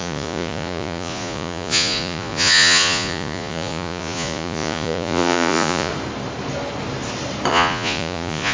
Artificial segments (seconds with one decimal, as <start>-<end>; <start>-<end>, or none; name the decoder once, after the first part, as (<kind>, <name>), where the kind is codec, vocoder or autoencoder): 0.0-5.9 (vocoder, Vocos); 7.5-8.5

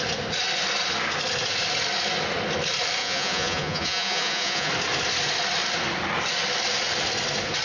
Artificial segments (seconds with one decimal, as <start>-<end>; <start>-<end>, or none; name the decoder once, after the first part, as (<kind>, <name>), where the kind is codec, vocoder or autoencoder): 3.0-4.7 (vocoder, Vocos)